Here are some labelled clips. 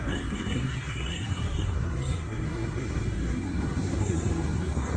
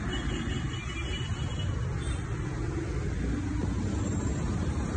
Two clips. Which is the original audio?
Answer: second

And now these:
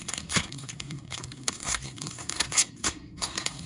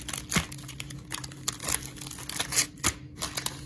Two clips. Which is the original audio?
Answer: second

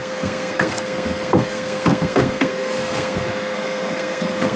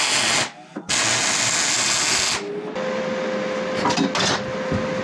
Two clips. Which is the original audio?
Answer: second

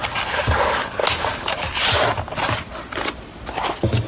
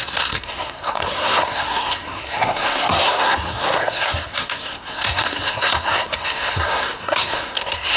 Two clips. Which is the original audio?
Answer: first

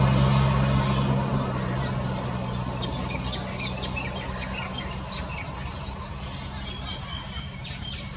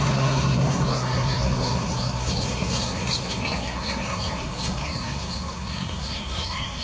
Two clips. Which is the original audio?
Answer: first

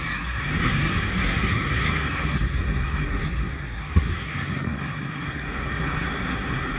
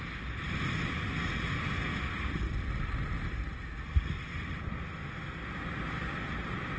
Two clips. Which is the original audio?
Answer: second